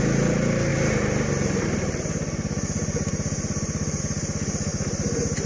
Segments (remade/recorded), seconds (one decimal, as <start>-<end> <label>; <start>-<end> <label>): 0.0-5.5 recorded